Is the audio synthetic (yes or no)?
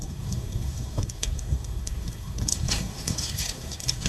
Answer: yes